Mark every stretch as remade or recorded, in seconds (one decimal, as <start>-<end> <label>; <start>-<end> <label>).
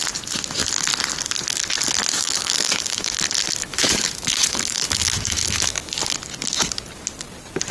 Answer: 0.0-2.1 recorded; 2.1-3.2 remade; 3.2-3.6 recorded; 3.6-6.0 remade; 6.0-7.7 recorded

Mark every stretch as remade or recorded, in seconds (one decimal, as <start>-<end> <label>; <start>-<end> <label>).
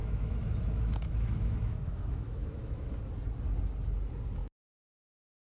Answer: 0.0-3.0 remade; 3.0-4.4 recorded; 4.4-5.5 remade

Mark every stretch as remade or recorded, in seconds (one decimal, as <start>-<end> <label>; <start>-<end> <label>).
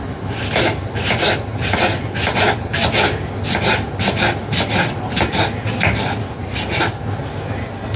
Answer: 0.0-8.0 recorded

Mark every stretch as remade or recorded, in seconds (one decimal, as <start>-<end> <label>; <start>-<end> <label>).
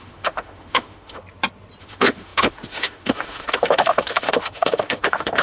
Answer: 0.0-1.2 remade; 1.2-1.8 recorded; 1.8-5.4 remade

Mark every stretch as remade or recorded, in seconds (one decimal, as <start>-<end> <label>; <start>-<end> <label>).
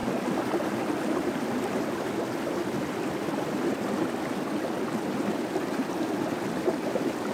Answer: 0.0-7.3 recorded